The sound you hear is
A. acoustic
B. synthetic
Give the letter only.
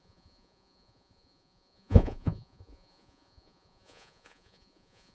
B